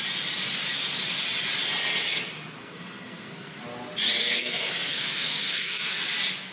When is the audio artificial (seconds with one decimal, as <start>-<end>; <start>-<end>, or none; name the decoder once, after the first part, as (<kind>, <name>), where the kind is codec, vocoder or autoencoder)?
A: 2.6-3.6 (codec, SNAC); 4.2-6.0